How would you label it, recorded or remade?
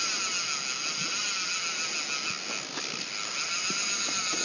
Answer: recorded